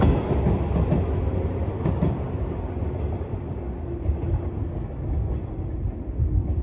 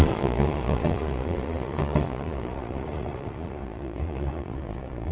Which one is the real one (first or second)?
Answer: first